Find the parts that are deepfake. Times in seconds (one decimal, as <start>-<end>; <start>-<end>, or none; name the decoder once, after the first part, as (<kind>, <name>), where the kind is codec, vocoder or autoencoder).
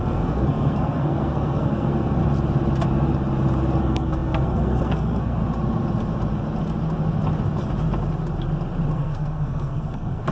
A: 0.0-2.2 (codec, SNAC); 3.8-5.4; 8.9-10.3